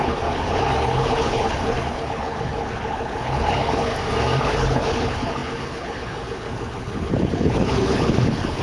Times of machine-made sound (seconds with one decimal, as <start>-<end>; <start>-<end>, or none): 0.0-3.9; 4.4-8.6